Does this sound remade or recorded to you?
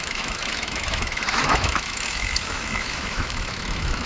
remade